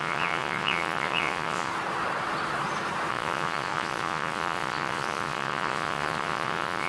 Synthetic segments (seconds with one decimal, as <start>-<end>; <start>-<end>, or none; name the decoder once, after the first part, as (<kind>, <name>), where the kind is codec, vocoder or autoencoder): 0.0-1.7 (vocoder, Vocos); 3.1-6.9